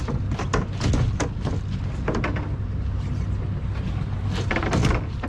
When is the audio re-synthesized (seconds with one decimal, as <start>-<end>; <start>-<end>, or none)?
none